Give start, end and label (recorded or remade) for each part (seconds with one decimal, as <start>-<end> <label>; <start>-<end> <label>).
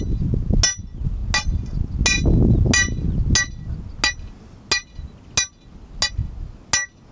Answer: 0.0-7.1 recorded